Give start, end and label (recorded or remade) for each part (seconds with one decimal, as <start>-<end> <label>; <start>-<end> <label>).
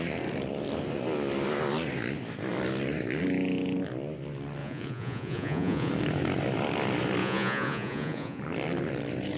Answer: 0.0-4.6 recorded; 4.6-5.9 remade; 5.9-7.2 recorded; 7.2-8.4 remade; 8.4-9.4 recorded